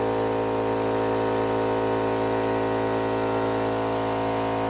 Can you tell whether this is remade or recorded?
recorded